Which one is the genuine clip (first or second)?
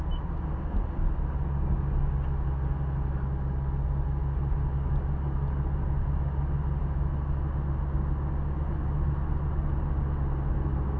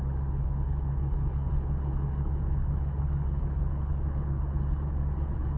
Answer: first